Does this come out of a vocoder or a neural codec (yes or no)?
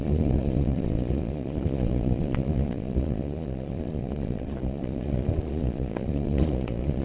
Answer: yes